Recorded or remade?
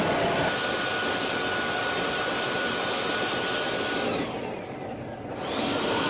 recorded